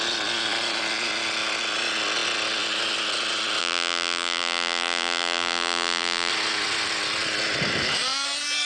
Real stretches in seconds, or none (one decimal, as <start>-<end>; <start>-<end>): 0.0-3.6; 6.3-8.6